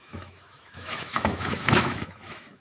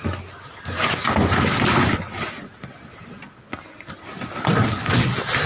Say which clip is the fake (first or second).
first